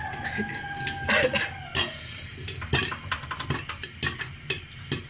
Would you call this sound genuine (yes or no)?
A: yes